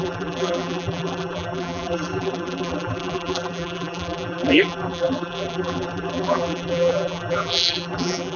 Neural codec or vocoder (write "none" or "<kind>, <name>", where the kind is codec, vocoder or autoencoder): vocoder, BigVGAN v2